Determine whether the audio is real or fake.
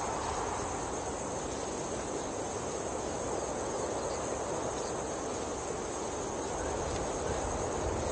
real